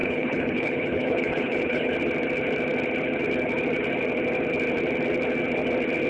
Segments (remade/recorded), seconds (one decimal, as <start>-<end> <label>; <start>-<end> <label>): 0.0-1.9 remade; 1.9-6.1 recorded